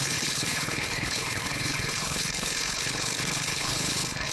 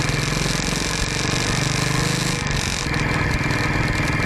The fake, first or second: first